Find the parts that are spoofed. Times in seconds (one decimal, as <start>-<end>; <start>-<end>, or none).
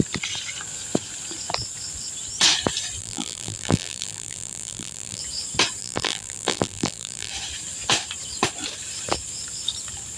3.0-5.2; 5.8-7.3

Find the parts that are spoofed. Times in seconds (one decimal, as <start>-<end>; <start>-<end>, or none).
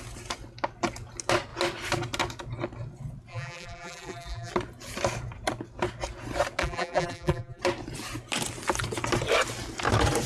3.3-4.5; 6.6-7.6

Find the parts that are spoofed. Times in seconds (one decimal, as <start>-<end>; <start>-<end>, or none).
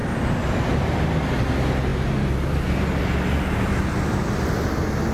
none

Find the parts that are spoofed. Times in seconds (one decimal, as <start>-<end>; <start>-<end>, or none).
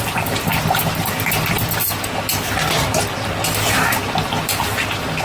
none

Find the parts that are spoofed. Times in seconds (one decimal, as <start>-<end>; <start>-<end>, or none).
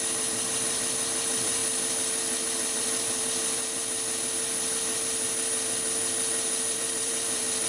0.0-1.6; 2.5-3.8; 6.7-7.7